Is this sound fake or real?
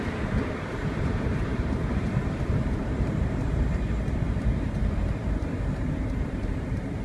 fake